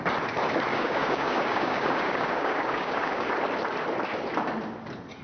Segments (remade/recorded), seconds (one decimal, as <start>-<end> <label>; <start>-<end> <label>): 0.0-0.7 recorded; 0.7-3.3 remade; 3.3-5.2 recorded

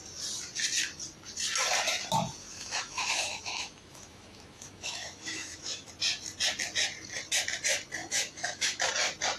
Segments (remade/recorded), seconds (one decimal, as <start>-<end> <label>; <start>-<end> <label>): 0.0-2.4 recorded; 2.4-5.9 remade; 5.9-8.0 recorded; 8.0-8.9 remade; 8.9-9.4 recorded

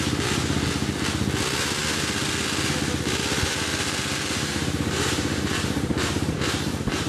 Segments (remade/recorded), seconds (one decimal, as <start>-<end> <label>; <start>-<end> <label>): 0.0-4.5 recorded; 4.5-7.1 remade

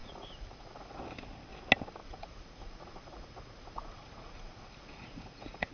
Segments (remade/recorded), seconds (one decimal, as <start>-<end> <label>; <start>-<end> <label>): 0.0-1.0 remade; 1.0-2.0 recorded; 2.0-5.7 remade

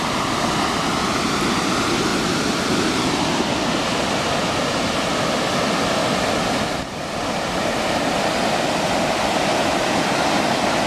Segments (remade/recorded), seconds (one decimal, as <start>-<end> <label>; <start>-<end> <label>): 0.0-10.9 recorded

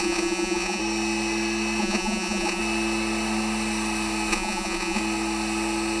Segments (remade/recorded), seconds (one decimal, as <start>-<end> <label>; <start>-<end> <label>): 0.0-0.8 remade; 0.8-1.8 recorded; 1.8-2.6 remade; 2.6-4.3 recorded; 4.3-5.0 remade; 5.0-6.0 recorded

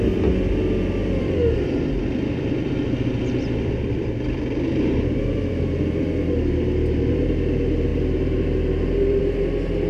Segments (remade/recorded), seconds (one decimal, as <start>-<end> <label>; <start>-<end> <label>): 0.0-1.0 recorded; 1.0-5.6 remade; 5.6-7.9 recorded; 7.9-9.2 remade; 9.2-9.9 recorded